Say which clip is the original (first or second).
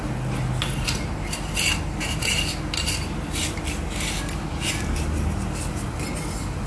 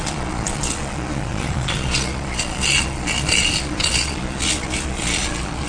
first